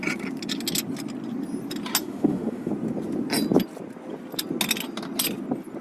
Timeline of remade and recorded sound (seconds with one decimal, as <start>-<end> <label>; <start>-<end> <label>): 0.0-2.0 recorded; 2.0-2.7 remade; 2.7-5.8 recorded